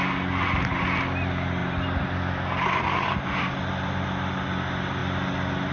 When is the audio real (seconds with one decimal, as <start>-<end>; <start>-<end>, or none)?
0.0-5.7